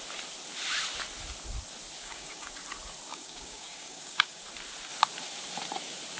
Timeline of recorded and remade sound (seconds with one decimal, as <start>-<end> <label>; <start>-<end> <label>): 0.0-2.0 recorded; 2.0-2.5 remade; 2.5-3.1 recorded; 3.1-4.4 remade; 4.4-6.2 recorded